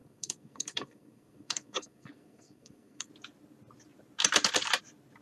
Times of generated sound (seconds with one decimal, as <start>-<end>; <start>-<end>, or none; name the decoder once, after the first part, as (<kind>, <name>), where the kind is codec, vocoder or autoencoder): 0.0-3.1 (codec, SNAC)